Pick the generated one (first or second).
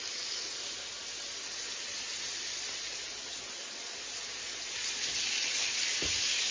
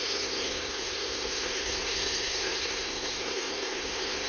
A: second